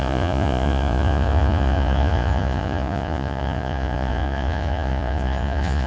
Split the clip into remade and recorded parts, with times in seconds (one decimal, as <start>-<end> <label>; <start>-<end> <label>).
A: 0.0-5.9 remade